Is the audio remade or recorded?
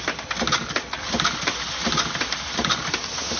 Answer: recorded